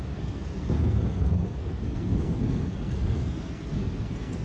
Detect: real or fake fake